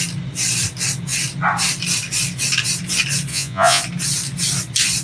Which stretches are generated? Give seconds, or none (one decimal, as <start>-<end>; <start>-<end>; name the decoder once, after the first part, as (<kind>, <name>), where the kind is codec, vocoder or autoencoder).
3.3-3.8 (vocoder, Vocos)